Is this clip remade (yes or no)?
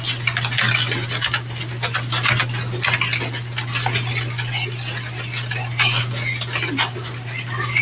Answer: no